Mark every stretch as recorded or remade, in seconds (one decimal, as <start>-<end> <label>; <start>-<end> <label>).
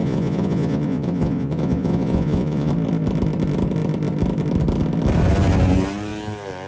0.0-2.7 remade; 2.7-6.7 recorded